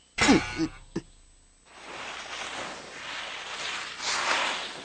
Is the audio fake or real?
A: real